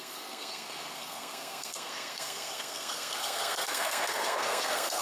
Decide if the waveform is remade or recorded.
remade